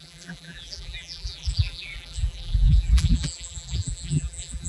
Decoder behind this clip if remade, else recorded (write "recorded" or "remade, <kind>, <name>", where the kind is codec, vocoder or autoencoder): remade, vocoder, BigVGAN v2